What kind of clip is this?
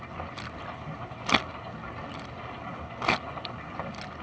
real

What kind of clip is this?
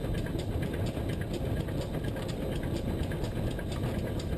real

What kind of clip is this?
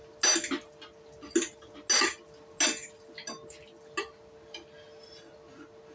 real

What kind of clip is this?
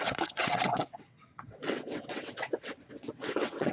fake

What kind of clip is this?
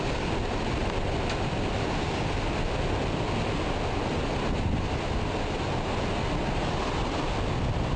real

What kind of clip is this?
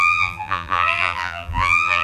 fake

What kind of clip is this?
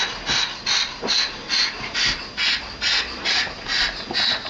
real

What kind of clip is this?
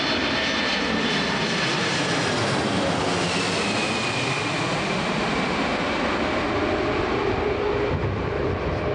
real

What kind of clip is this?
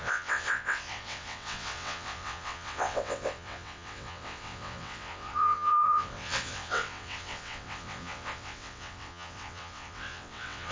fake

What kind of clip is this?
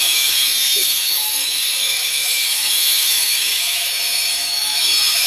fake